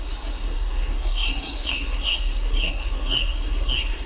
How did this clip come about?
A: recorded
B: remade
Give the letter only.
B